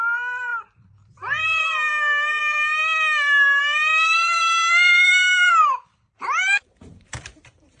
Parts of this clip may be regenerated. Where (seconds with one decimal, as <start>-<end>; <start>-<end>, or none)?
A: 0.0-2.8; 3.6-7.8